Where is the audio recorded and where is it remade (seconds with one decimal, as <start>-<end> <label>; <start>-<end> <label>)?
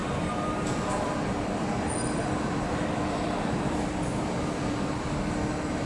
0.0-5.9 remade